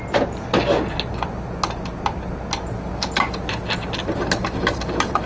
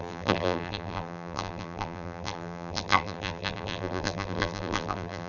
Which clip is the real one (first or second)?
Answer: first